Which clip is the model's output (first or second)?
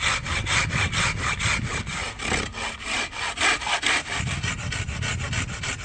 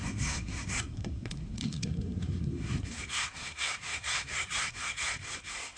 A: second